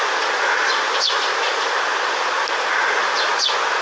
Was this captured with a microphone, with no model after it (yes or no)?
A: yes